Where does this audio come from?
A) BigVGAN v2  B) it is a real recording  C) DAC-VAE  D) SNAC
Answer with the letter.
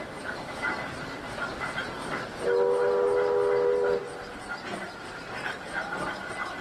B